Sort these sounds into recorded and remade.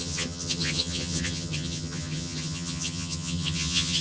remade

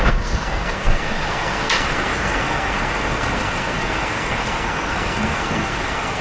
remade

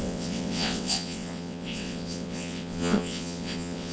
remade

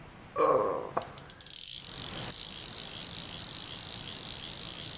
recorded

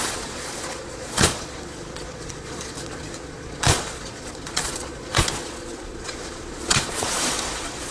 remade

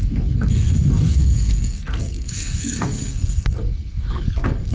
remade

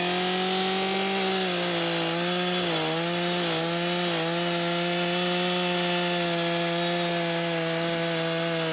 recorded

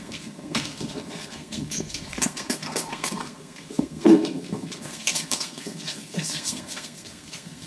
remade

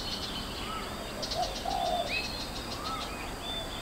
recorded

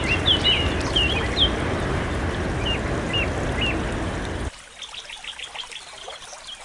recorded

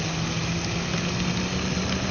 recorded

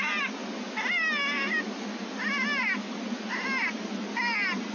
recorded